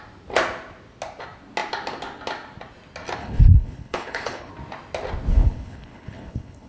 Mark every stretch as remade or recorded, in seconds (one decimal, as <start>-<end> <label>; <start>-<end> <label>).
0.0-3.2 recorded; 3.2-4.5 remade; 4.5-5.3 recorded; 5.3-6.7 remade